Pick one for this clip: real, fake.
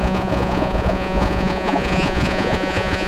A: fake